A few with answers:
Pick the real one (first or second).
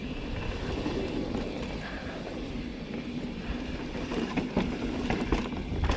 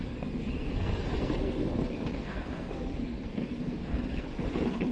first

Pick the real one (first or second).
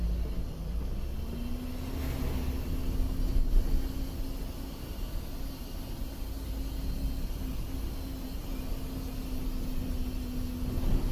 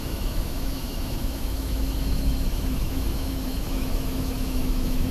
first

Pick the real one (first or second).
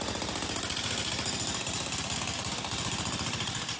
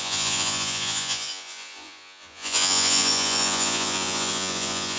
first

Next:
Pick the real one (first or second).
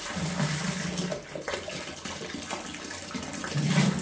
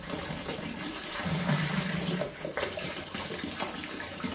first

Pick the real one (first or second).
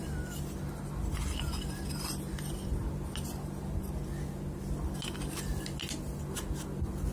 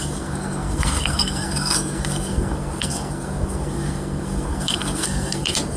first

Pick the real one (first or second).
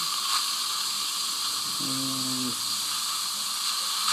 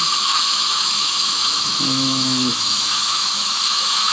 first